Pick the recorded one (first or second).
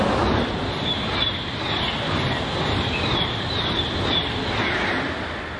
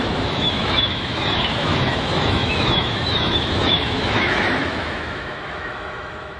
first